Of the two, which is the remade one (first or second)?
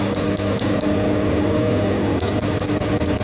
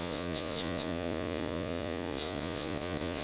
second